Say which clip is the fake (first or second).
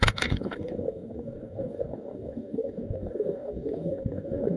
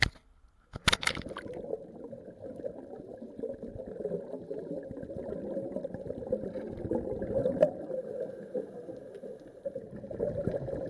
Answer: first